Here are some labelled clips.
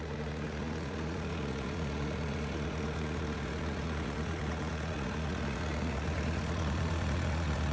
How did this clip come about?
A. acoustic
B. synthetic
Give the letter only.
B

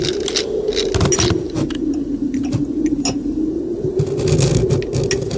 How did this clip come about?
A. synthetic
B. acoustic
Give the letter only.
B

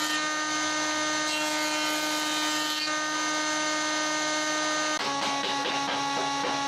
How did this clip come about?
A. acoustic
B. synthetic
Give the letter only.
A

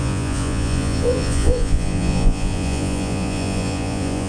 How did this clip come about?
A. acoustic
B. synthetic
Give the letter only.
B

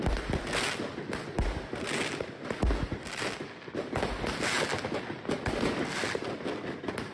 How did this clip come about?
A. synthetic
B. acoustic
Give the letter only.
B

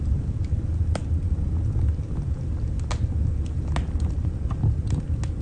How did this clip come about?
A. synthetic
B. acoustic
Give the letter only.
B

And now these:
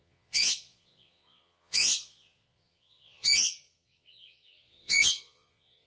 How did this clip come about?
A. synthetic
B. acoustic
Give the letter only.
A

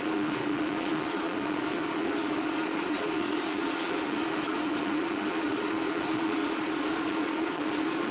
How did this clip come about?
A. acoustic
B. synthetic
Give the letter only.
B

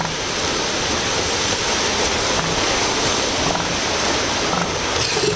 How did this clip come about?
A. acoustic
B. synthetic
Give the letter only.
A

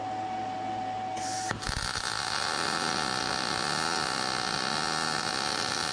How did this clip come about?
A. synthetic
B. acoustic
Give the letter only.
B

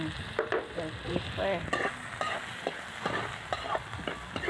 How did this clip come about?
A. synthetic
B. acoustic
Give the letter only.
B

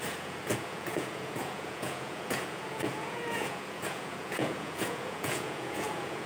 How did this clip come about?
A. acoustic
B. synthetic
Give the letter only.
B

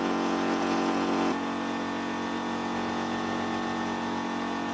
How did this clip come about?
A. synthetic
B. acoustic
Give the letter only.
A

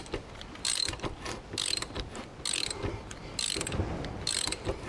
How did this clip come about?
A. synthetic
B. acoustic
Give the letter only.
B